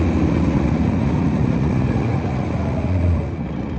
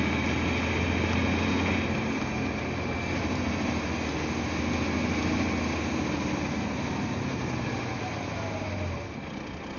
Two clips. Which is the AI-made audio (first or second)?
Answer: first